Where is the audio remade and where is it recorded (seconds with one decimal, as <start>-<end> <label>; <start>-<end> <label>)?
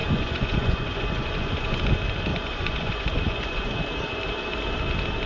0.0-1.8 remade; 1.8-2.3 recorded; 2.3-3.8 remade; 3.8-5.3 recorded